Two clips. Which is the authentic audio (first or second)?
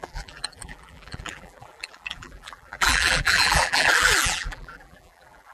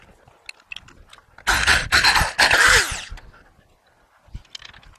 second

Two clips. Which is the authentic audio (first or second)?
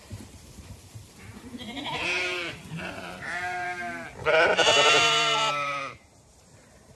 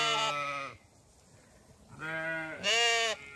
second